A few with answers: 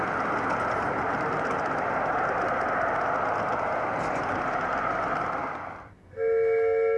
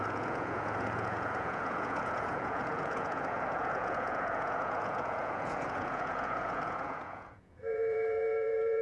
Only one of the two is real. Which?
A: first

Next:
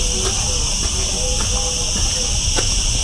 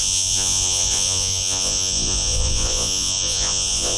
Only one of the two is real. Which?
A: first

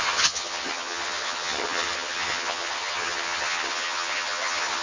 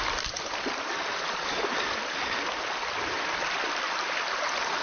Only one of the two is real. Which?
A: second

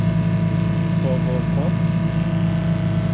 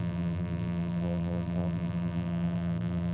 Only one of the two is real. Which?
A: first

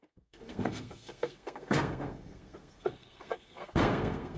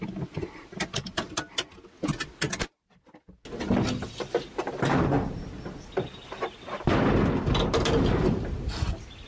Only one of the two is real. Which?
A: second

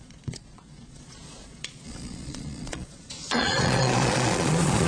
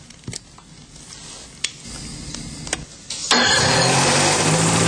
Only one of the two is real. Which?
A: second